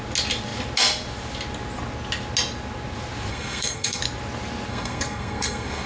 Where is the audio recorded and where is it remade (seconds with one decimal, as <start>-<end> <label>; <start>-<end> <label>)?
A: 0.0-3.3 recorded; 3.3-4.0 remade; 4.0-4.7 recorded; 4.7-5.9 remade